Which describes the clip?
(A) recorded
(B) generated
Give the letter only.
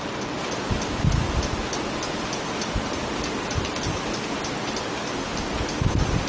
A